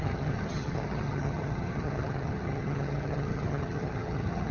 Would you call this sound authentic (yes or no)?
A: no